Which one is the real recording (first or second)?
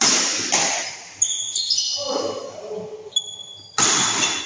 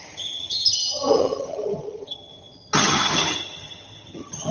first